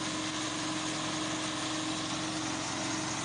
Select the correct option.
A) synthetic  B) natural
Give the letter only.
B